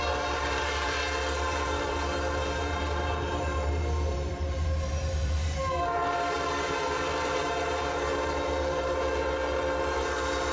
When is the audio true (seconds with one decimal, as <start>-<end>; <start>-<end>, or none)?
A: none